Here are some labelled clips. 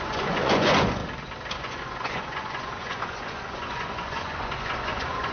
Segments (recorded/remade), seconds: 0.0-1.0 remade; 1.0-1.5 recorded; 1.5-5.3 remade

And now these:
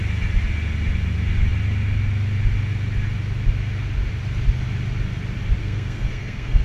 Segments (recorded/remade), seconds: 0.0-5.6 recorded; 5.6-6.6 remade

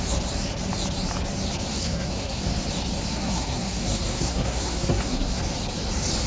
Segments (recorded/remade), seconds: 0.0-1.7 recorded; 1.7-2.4 remade; 2.4-3.1 recorded; 3.1-5.4 remade; 5.4-6.3 recorded

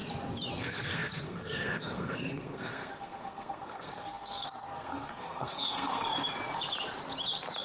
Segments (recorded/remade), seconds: 0.0-0.5 recorded; 0.5-6.1 remade; 6.1-7.6 recorded